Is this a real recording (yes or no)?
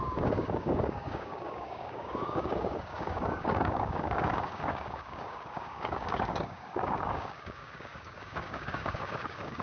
no